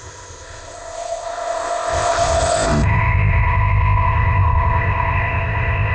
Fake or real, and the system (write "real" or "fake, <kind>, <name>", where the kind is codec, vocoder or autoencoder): fake, codec, ZipCodec